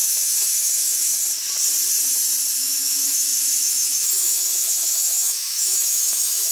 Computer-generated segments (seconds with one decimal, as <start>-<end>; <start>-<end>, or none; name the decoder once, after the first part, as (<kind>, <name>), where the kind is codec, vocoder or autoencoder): 0.0-1.1 (autoencoder, DAC-VAE); 2.6-6.5